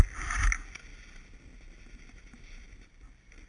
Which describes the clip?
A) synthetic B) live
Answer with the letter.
B